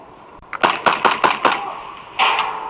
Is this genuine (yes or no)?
yes